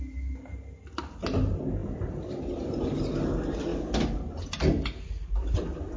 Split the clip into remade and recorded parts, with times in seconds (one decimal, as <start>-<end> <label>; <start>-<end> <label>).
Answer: 0.0-6.0 recorded